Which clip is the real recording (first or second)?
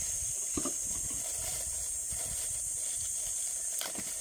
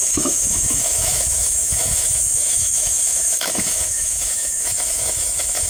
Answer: first